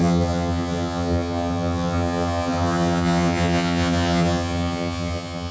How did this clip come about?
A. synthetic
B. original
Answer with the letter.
A